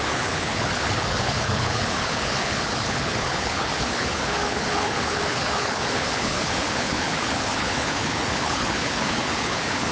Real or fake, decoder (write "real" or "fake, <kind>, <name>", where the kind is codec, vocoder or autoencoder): fake, codec, HILCodec